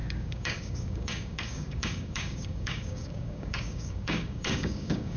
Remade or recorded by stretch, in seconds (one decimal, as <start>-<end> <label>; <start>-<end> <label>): 0.0-5.2 remade